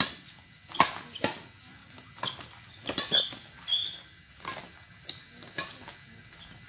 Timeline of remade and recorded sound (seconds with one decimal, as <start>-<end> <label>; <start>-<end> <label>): 0.0-6.7 recorded